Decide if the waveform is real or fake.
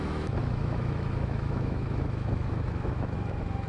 fake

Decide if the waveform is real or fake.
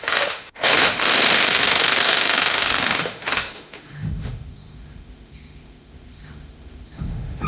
fake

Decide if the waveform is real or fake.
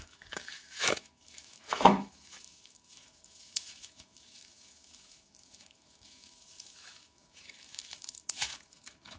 fake